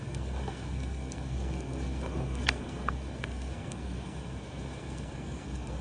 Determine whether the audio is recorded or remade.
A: remade